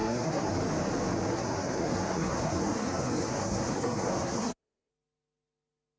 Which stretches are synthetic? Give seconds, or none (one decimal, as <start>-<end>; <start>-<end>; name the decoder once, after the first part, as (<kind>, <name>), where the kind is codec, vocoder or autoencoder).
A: 0.0-0.5 (codec, SNAC); 1.3-4.9